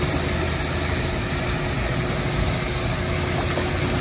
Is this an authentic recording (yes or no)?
yes